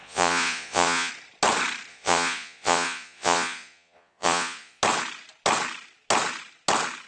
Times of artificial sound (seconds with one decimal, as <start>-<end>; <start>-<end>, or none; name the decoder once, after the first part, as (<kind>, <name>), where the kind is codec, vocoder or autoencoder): 0.0-1.1 (vocoder, Vocos); 1.9-4.8